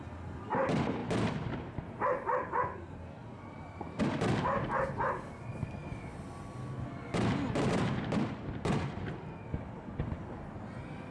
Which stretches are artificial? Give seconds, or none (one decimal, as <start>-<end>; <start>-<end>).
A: none